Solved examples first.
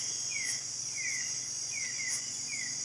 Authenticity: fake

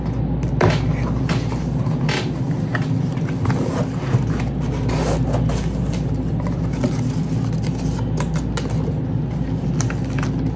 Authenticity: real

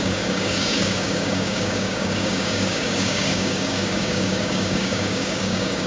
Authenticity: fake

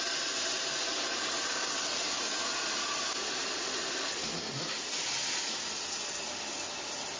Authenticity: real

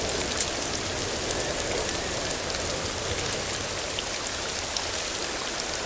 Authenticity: real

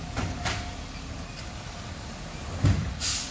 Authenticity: real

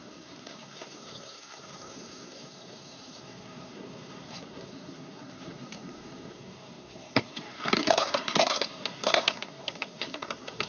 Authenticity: fake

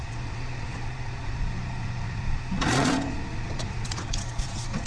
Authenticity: fake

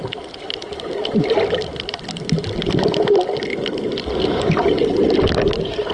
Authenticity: real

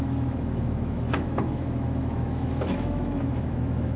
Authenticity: fake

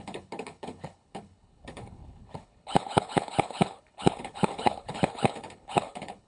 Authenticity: fake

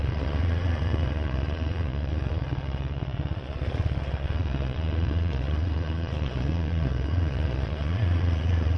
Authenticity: fake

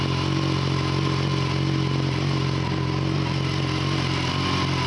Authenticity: real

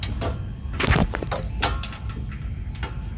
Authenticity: real